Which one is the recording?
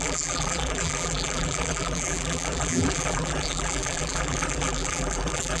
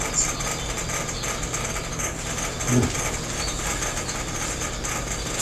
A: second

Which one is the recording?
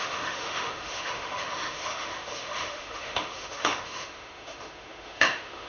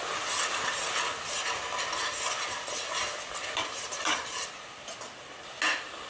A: second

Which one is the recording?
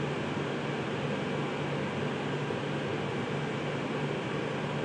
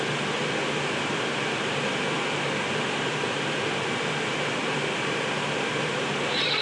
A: first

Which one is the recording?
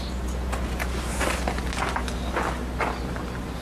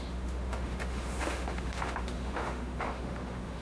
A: first